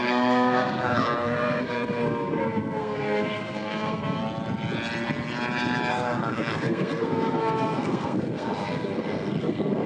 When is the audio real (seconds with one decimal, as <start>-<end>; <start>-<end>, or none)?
4.2-5.9